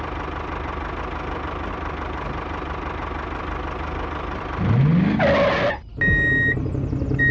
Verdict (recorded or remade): recorded